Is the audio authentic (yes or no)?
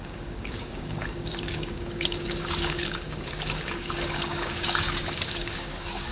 no